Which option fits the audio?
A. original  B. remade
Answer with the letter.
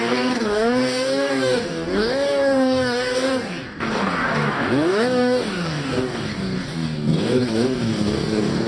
B